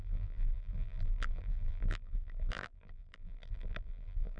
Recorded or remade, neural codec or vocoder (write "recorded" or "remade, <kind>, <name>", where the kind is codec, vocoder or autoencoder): remade, vocoder, BigVGAN v2